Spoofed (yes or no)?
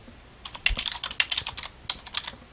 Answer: no